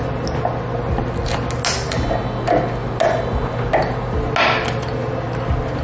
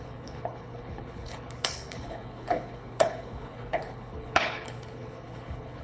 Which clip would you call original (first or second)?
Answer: first